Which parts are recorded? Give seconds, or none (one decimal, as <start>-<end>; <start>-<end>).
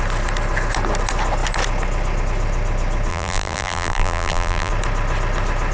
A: 0.0-3.1; 4.7-5.7